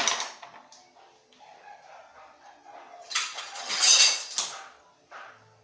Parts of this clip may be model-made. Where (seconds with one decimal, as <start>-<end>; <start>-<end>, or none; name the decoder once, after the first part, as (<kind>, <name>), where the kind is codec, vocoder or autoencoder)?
3.0-4.0 (vocoder, HiFi-GAN)